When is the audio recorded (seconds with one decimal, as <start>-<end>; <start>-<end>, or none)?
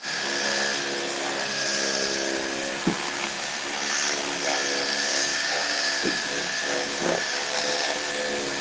0.0-5.1; 8.1-8.6